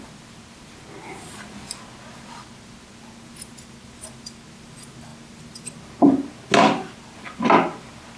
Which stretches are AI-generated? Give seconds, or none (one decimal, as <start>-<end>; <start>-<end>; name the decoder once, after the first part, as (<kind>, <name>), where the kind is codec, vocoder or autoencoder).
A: none